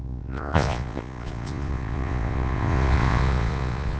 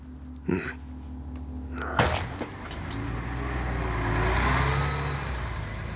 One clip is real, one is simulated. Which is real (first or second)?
second